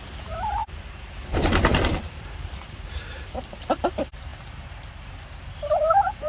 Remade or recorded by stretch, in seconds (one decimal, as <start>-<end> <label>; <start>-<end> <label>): 0.0-0.6 remade; 0.6-2.0 recorded; 2.0-4.3 remade; 4.3-4.9 recorded; 4.9-6.3 remade